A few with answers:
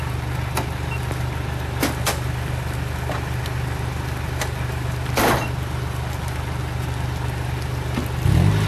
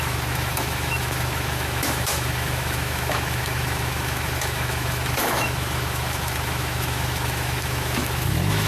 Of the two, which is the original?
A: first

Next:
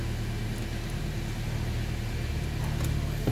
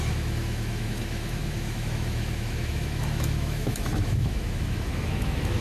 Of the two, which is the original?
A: first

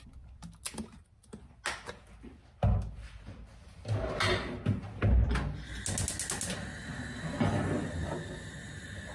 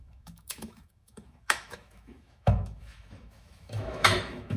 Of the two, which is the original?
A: first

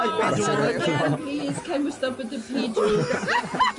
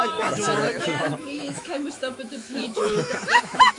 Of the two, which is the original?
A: first